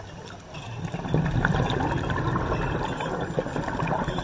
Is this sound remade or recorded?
recorded